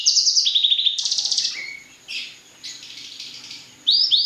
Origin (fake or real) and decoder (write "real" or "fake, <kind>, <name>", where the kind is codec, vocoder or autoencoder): fake, vocoder, BigVGAN v2